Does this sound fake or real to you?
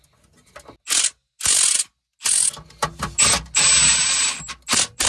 real